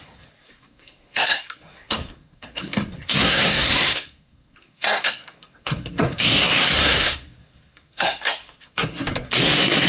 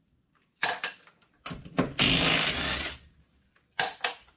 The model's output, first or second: first